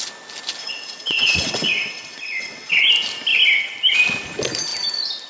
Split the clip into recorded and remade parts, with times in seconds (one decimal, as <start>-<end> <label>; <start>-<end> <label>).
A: 0.0-0.6 recorded; 0.6-2.8 remade; 2.8-5.3 recorded